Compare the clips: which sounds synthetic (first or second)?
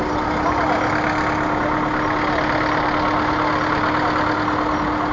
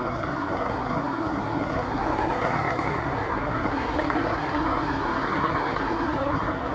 second